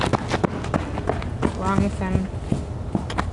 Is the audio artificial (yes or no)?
no